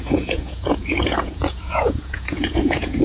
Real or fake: fake